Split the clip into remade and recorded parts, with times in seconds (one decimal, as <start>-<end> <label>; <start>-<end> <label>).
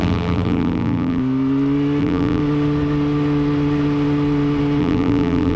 0.0-1.2 remade; 1.2-2.0 recorded; 2.0-2.4 remade; 2.4-4.8 recorded; 4.8-5.6 remade